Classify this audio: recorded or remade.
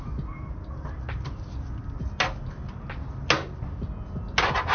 recorded